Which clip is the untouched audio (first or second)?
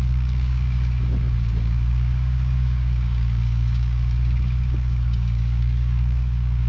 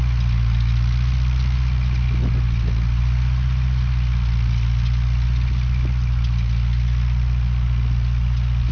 second